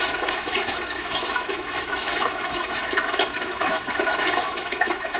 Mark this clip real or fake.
fake